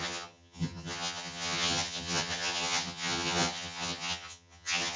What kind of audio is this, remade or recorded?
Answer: remade